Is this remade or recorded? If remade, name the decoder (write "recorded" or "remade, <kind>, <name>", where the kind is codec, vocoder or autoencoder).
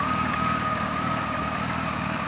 remade, codec, DAC